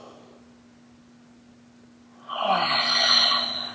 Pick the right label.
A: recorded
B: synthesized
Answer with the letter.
A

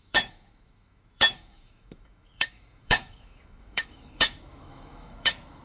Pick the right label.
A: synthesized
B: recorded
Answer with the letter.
A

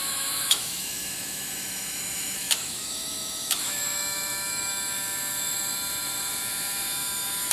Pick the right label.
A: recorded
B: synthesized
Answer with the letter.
B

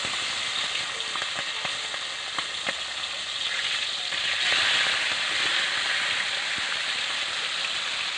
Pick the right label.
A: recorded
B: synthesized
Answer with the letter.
A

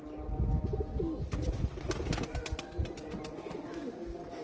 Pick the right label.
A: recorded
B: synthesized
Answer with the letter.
A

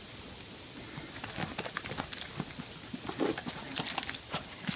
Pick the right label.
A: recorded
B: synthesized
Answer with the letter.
A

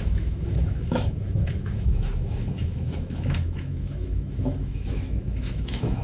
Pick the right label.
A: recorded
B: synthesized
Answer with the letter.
B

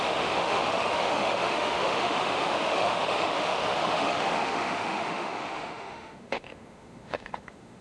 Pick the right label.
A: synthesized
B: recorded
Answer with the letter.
A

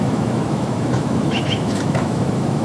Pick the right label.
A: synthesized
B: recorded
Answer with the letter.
A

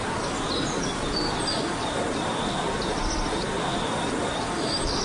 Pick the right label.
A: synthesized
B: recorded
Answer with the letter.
B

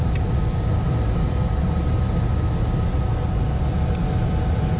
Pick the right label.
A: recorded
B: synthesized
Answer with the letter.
A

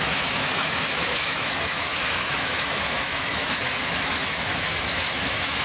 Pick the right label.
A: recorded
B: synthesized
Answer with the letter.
B